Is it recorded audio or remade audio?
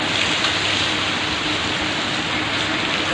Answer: recorded